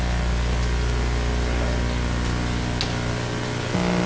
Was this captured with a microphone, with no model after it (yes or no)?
yes